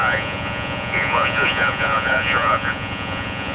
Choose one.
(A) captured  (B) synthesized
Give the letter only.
B